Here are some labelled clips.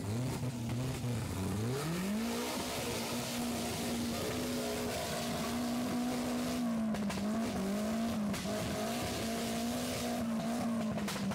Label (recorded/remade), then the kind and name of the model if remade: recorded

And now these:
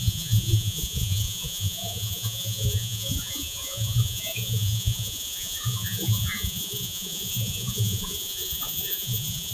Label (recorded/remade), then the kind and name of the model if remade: remade, vocoder, Vocos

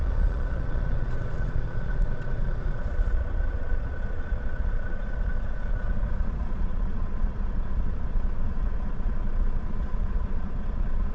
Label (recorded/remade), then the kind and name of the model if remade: remade, vocoder, Vocos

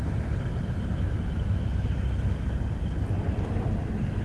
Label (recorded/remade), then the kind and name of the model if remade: recorded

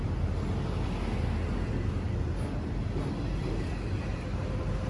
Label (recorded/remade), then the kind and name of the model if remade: recorded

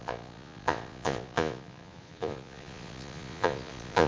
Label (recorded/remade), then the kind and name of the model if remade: remade, vocoder, Vocos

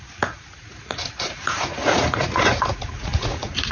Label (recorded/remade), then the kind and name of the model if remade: remade, vocoder, Vocos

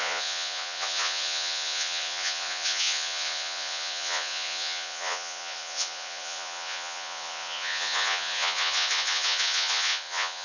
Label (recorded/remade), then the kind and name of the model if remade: remade, vocoder, Vocos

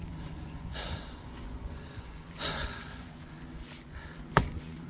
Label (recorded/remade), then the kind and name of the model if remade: remade, vocoder, Vocos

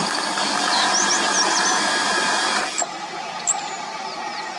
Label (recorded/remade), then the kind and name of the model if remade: recorded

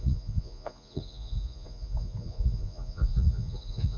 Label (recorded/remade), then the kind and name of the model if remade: remade, vocoder, Vocos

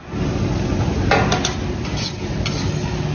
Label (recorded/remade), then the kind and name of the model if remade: recorded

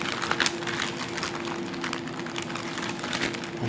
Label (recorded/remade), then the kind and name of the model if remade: recorded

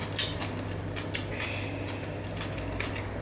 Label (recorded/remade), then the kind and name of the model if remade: recorded